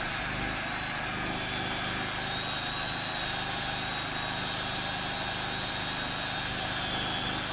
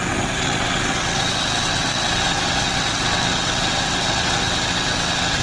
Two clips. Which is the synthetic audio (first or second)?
second